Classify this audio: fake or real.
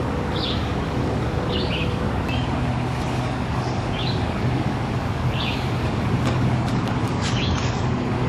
fake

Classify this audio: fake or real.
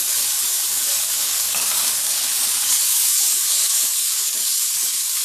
fake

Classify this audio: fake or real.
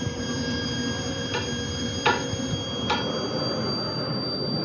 real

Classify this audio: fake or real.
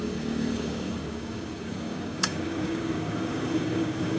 fake